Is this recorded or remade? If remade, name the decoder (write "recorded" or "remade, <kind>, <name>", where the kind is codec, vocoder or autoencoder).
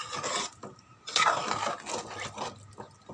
recorded